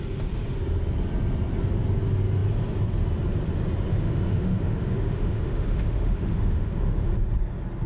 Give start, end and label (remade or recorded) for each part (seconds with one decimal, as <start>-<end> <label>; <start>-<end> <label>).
0.0-3.9 recorded; 3.9-7.1 remade; 7.1-7.9 recorded